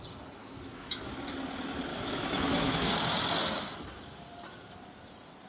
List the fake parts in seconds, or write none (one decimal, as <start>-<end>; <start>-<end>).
0.4-1.0; 1.9-2.9